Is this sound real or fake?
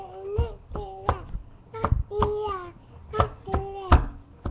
real